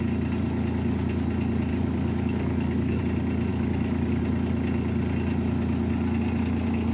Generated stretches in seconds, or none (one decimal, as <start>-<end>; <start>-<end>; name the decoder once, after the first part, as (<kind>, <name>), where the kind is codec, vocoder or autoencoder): 1.7-3.0 (codec, DAC); 3.5-4.2